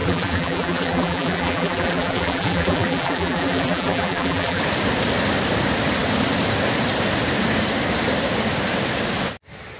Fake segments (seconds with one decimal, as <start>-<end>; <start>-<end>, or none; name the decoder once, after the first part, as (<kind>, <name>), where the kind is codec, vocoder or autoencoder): 0.0-4.6 (vocoder, BigVGAN v2)